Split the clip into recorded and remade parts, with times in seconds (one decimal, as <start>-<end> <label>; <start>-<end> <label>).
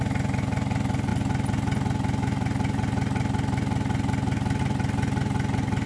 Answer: 0.0-5.9 recorded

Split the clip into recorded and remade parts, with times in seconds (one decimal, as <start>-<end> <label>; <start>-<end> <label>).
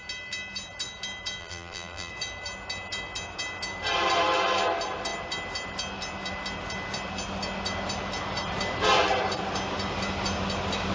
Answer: 0.0-1.4 recorded; 1.4-2.1 remade; 2.1-10.9 recorded